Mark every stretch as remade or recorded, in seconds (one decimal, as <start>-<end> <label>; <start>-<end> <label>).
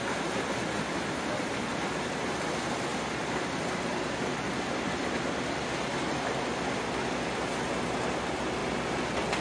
0.0-9.4 recorded